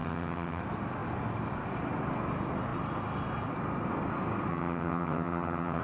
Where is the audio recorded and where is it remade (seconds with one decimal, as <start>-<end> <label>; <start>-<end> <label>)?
0.0-0.6 remade; 0.6-4.5 recorded; 4.5-5.8 remade